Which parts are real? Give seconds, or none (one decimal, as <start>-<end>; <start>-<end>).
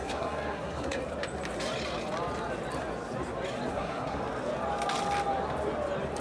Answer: 1.0-3.7; 4.2-6.2